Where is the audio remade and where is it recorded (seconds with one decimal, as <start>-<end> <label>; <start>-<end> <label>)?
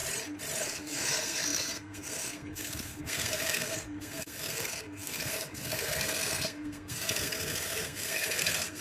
0.0-0.6 recorded; 0.6-8.8 remade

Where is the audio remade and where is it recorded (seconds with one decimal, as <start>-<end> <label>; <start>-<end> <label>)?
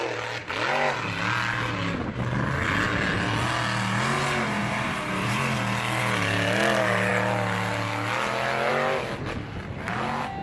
0.0-10.4 recorded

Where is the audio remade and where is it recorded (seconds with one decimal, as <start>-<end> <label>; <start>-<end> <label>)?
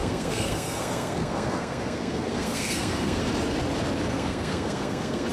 0.0-3.2 remade; 3.2-4.1 recorded; 4.1-5.3 remade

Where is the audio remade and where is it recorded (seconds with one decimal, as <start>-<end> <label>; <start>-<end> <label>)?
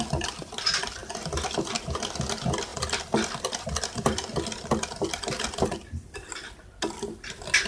0.0-7.7 recorded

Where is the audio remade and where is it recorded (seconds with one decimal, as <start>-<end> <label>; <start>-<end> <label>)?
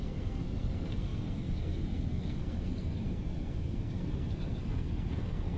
0.0-5.6 remade